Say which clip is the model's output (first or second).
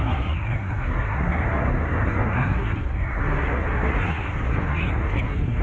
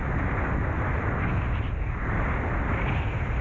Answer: first